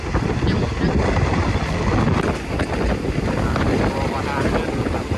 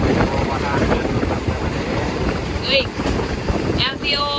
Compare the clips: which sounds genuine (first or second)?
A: first